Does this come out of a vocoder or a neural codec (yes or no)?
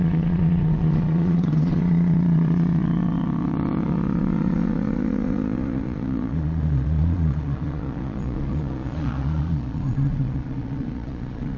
yes